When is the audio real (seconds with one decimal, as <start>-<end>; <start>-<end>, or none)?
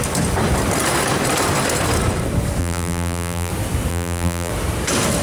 0.0-2.6; 3.5-3.9; 4.5-5.2